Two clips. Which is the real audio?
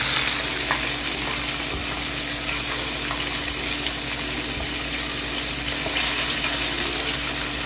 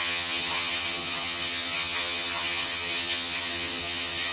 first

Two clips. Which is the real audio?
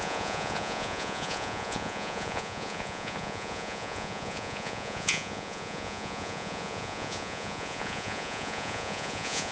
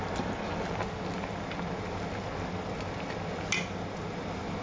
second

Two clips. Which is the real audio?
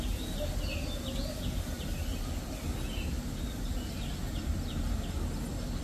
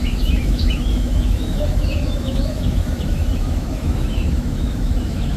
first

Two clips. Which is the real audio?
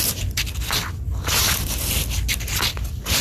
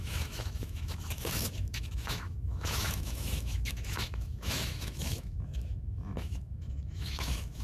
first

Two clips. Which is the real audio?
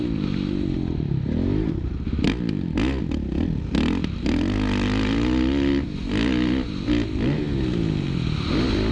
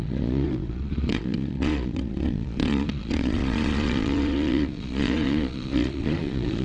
first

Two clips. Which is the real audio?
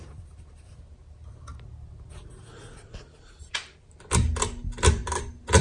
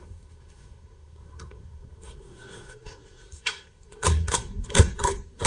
first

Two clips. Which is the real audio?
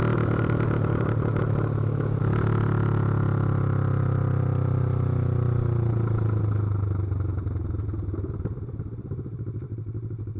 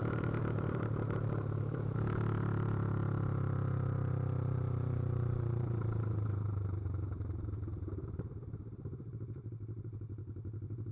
first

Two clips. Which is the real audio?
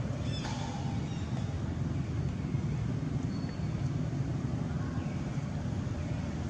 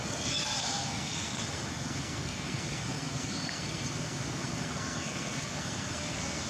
first